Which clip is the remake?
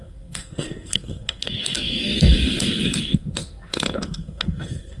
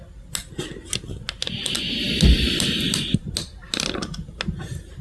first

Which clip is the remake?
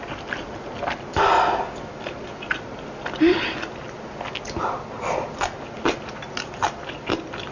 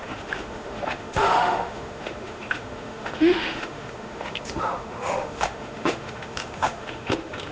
second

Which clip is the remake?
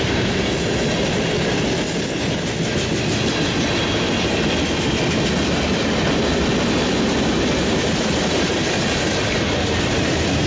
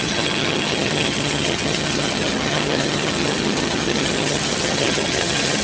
second